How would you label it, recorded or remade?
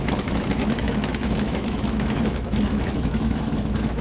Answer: remade